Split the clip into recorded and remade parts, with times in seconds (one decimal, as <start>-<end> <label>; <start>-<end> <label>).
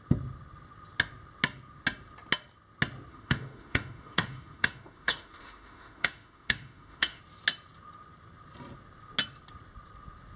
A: 0.0-3.1 recorded; 3.1-7.2 remade; 7.2-10.4 recorded